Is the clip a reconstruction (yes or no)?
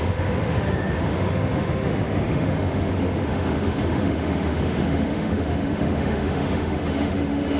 yes